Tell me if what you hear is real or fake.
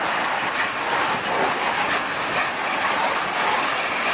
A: real